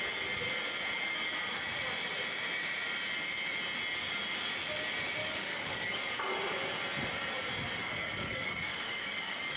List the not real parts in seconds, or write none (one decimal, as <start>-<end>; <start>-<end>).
5.2-6.4; 7.8-9.6